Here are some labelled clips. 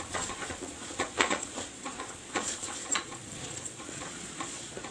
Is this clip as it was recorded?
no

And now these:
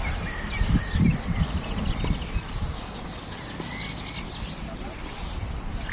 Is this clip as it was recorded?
yes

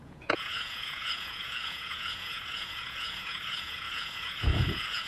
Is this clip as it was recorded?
no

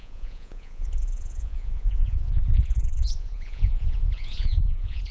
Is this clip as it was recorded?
no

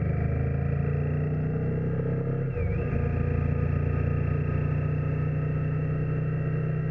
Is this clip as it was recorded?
yes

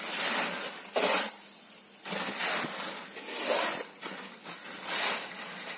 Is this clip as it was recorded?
yes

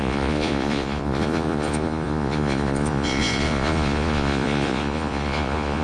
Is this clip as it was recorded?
no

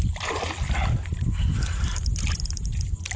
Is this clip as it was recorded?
yes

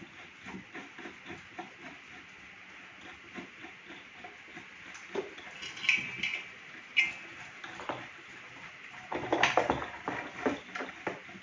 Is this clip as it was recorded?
yes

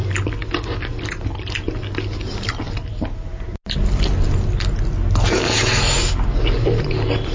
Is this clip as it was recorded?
yes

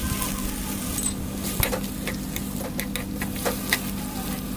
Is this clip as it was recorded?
yes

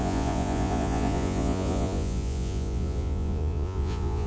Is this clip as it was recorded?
no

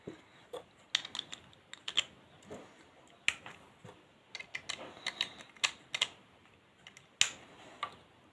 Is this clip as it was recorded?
yes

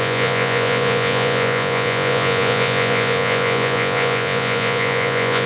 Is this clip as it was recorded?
no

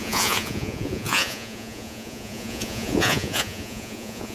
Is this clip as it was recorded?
no